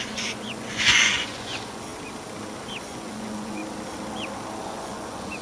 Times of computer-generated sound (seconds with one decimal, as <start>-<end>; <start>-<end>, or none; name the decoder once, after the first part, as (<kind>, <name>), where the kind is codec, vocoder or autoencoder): 0.0-1.9 (vocoder, Vocos); 2.8-3.6; 4.6-5.4

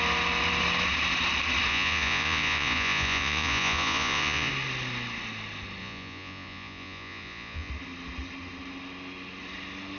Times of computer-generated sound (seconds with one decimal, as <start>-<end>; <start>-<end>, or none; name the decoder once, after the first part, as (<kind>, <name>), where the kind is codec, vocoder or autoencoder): 1.7-4.5 (vocoder, Vocos); 5.8-7.7

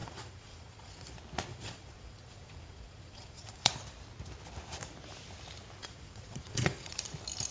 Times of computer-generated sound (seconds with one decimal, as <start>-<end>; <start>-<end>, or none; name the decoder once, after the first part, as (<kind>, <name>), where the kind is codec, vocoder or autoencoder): 0.0-1.1 (vocoder, Vocos); 1.5-3.7; 5.8-7.1

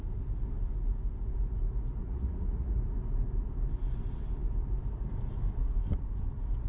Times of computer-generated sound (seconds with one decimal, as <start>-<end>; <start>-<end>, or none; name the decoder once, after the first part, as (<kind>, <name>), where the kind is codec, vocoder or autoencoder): 2.0-2.8 (vocoder, Vocos)

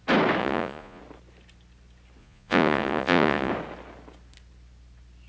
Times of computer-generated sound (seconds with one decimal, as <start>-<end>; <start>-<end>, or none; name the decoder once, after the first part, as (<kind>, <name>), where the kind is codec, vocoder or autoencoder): 0.4-1.0 (vocoder, Vocos); 2.2-3.5

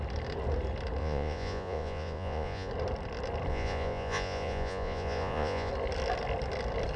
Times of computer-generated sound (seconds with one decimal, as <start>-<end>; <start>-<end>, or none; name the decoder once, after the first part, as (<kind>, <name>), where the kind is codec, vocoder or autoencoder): 1.0-2.7 (vocoder, Vocos); 3.5-5.7

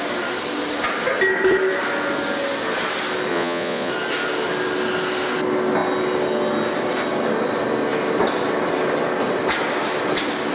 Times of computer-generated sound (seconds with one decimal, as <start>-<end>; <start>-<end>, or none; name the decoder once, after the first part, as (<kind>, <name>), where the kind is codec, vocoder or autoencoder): 3.3-3.9 (vocoder, Vocos)

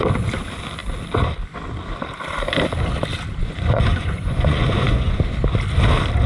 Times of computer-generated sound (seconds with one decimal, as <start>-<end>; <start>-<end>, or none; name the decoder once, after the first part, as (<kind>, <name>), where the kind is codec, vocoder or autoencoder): 3.4-5.2 (vocoder, Vocos)